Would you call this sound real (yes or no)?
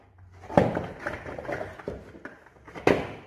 yes